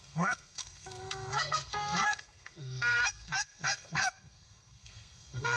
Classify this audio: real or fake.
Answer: fake